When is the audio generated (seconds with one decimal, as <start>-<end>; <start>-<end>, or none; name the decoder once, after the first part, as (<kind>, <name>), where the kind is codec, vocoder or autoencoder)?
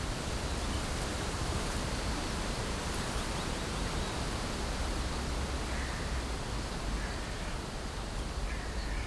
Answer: 1.1-3.4 (vocoder, BigVGAN v2)